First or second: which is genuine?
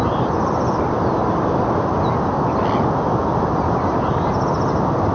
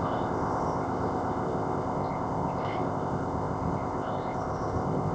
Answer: first